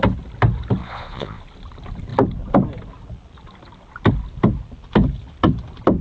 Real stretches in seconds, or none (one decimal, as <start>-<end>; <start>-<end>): 0.0-0.8; 1.4-6.0